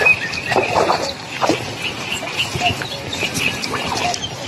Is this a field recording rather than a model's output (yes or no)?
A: yes